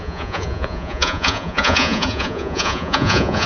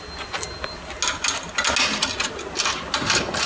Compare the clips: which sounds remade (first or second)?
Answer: first